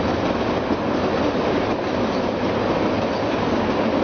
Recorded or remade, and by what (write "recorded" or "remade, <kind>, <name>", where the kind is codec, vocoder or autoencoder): recorded